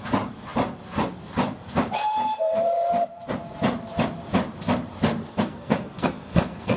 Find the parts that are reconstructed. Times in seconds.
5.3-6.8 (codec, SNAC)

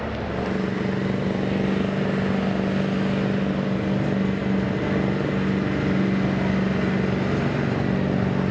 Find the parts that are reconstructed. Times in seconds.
none

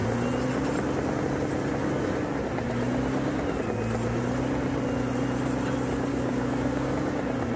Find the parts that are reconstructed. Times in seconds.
6.1-6.9 (codec, DAC)

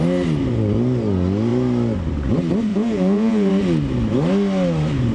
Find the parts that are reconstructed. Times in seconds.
2.7-3.5 (vocoder, Vocos)

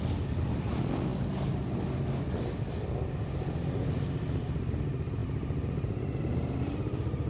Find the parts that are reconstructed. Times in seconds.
5.2-6.2 (vocoder, BigVGAN v2)

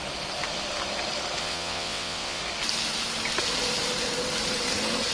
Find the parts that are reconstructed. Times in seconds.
1.4-2.4 (vocoder, WaveNeXt)